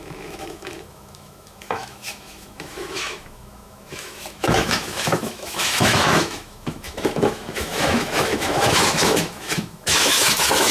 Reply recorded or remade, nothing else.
remade